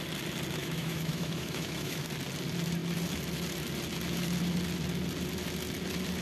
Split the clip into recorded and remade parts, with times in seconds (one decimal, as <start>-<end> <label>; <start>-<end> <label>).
0.0-0.6 recorded; 0.6-2.0 remade; 2.0-6.2 recorded